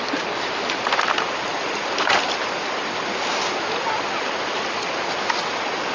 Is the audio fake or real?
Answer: real